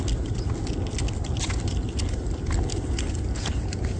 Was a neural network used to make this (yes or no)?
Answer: no